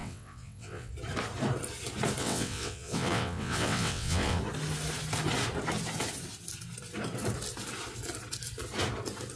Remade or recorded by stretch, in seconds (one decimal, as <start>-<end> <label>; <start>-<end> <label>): 0.0-0.9 remade; 0.9-2.2 recorded; 2.2-4.4 remade; 4.4-9.4 recorded